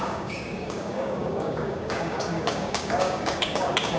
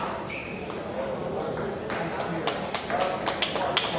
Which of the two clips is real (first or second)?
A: second